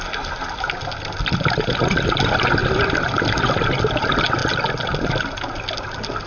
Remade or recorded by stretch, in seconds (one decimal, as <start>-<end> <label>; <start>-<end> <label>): 0.0-6.3 recorded